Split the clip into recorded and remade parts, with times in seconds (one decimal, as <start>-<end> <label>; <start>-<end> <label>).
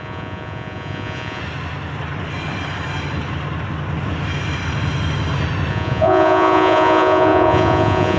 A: 0.0-1.4 remade; 1.4-5.7 recorded; 5.7-8.2 remade